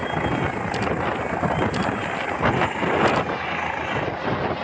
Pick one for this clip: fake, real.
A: real